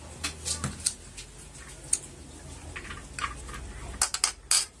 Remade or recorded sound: recorded